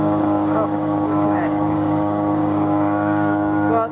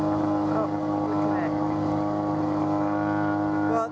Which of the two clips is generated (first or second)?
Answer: first